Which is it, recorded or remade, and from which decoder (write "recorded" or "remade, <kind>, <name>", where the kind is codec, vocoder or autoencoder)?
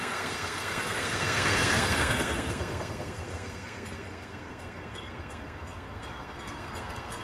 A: remade, codec, SNAC